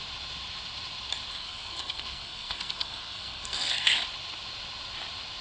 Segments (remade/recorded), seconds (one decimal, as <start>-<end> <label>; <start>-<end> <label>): 0.0-1.3 recorded; 1.3-3.9 remade; 3.9-5.4 recorded